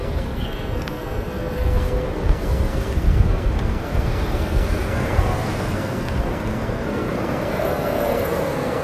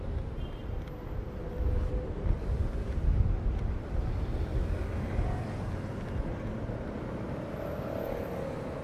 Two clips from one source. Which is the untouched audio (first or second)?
second